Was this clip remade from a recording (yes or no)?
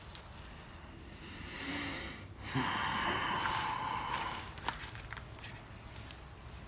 no